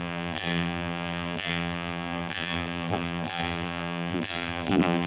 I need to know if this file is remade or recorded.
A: remade